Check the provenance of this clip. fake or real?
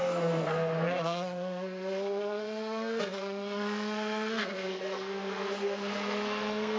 fake